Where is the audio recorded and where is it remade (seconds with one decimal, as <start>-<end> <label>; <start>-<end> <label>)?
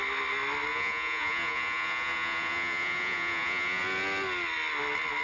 0.0-0.7 recorded; 0.7-3.8 remade; 3.8-5.2 recorded